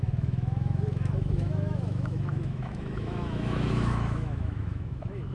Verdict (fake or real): fake